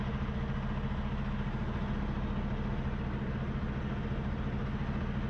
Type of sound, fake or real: real